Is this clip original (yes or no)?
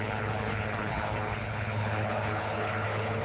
no